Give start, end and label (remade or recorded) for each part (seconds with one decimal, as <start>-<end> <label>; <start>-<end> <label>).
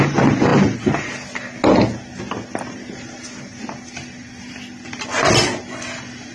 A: 0.0-6.3 recorded